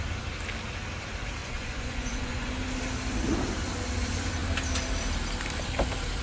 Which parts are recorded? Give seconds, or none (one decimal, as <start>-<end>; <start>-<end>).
0.0-1.4; 2.5-6.2